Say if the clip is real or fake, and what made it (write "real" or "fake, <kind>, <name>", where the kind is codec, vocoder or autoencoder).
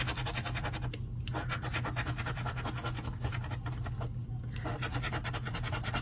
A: real